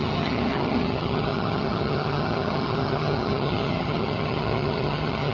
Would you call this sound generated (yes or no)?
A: yes